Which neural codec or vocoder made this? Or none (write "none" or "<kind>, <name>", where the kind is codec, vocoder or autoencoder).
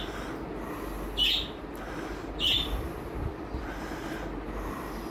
none